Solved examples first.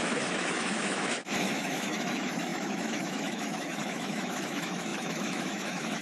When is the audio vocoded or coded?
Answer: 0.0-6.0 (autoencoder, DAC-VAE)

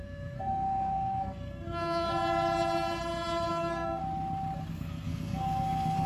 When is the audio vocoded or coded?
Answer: 0.0-2.1 (codec, SNAC); 3.5-4.0; 4.7-6.1

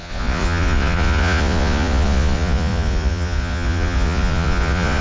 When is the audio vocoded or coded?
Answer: 0.0-5.0 (vocoder, Vocos)

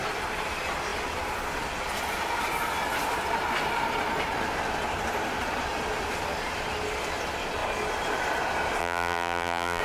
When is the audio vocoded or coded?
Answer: 8.8-9.8 (vocoder, BigVGAN v2)

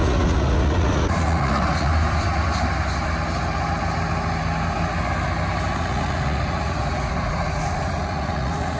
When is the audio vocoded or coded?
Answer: 0.0-1.9 (vocoder, Vocos); 5.7-8.8